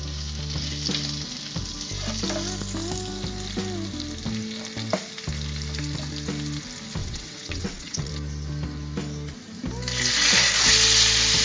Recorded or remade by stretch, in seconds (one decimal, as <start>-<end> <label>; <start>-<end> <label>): 0.0-7.0 recorded; 7.0-8.1 remade; 8.1-11.4 recorded